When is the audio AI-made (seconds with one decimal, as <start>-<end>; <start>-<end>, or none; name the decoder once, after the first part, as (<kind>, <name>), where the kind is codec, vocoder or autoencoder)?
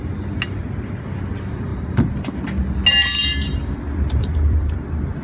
1.7-2.3 (vocoder, BigVGAN v2); 3.5-5.2